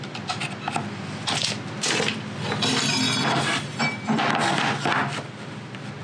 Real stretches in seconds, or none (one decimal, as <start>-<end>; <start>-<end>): 0.0-6.0